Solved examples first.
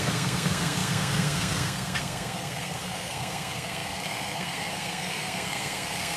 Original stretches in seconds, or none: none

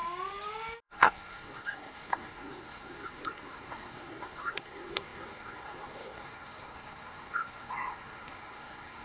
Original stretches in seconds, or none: 0.0-0.8

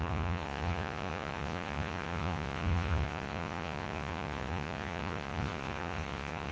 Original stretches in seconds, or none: none